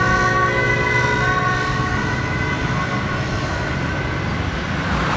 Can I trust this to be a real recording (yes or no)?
yes